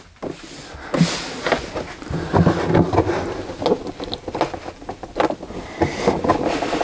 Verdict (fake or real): real